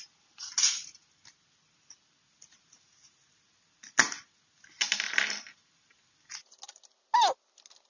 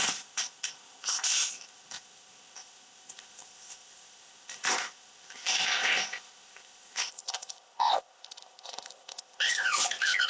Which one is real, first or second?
first